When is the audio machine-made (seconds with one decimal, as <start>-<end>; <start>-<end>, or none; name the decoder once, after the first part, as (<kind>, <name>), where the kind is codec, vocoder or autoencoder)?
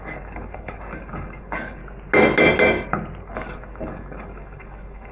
0.0-1.8 (codec, DAC); 3.2-5.1